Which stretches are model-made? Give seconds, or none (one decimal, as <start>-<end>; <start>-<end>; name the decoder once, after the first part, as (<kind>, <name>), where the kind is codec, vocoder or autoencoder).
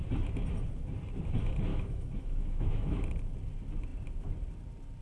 1.7-3.0 (autoencoder, DAC-VAE)